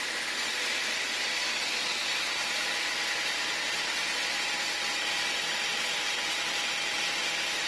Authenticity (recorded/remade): recorded